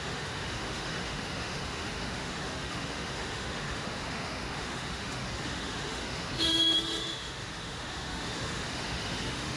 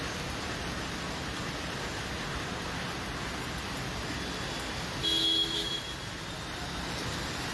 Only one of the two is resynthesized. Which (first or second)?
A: first